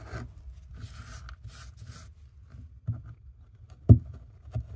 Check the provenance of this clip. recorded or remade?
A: recorded